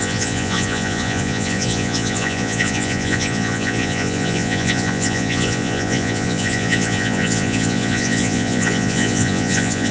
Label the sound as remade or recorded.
remade